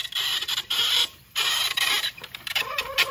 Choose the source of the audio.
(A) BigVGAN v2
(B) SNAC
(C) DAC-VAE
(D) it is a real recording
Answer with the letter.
A